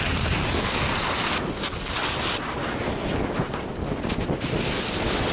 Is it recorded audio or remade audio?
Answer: recorded